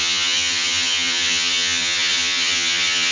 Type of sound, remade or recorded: remade